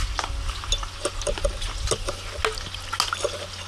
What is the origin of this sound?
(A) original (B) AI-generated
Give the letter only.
A